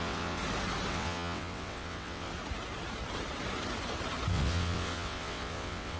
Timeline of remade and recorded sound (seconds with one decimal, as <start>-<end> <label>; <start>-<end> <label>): 0.0-0.4 remade; 0.4-0.9 recorded; 0.9-2.3 remade; 2.3-4.3 recorded; 4.3-6.0 remade